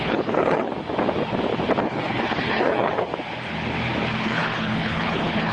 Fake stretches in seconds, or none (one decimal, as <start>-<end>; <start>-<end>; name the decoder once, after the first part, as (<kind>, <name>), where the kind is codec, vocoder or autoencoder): 0.0-0.7 (codec, HILCodec); 1.8-3.1; 4.2-5.5